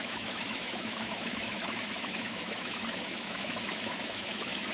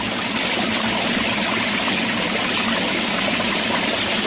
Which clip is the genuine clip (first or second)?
second